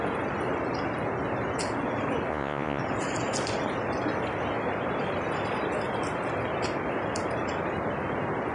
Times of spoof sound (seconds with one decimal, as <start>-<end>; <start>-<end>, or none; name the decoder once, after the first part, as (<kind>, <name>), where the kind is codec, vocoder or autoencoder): 2.3-2.8 (vocoder, Vocos)